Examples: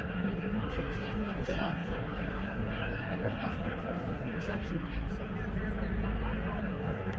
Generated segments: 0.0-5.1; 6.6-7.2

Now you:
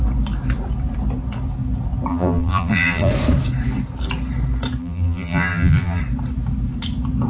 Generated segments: 2.1-3.1; 4.8-6.0

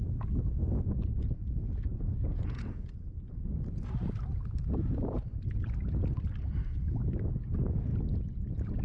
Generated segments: 0.6-2.9

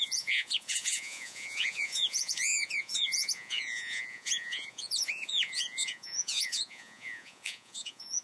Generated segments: 0.0-8.2